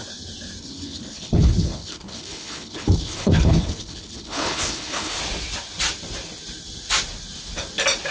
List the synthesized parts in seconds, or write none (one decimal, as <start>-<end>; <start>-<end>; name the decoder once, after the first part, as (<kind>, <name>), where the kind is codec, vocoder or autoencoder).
0.6-5.2 (codec, HILCodec)